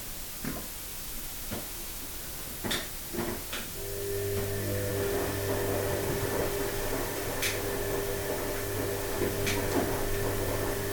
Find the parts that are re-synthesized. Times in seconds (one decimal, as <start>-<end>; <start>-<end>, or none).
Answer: 0.9-2.0